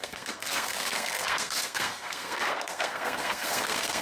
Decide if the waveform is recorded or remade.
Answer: remade